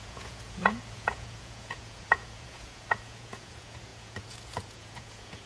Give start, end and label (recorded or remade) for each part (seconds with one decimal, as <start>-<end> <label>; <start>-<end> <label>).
0.0-5.5 remade